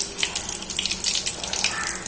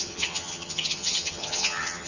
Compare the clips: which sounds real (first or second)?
first